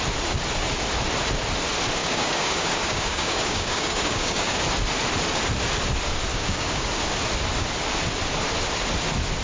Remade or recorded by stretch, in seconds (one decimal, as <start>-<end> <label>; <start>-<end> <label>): 0.0-2.0 recorded; 2.0-4.6 remade; 4.6-6.3 recorded; 6.3-6.9 remade; 6.9-9.4 recorded